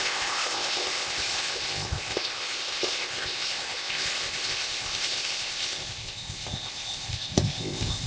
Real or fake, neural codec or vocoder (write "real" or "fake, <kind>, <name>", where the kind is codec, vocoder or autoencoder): fake, codec, ZipCodec